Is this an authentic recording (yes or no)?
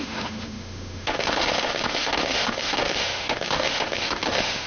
no